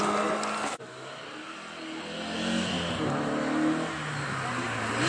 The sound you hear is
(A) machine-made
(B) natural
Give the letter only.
B